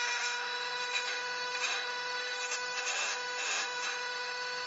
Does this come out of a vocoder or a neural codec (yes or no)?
yes